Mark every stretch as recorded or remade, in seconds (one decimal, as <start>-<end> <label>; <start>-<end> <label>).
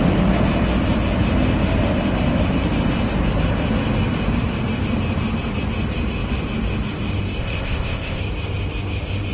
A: 0.0-7.4 recorded; 7.4-8.2 remade; 8.2-9.3 recorded